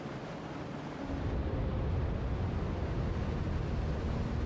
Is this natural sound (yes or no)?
yes